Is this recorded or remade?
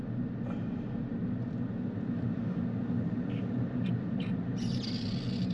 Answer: recorded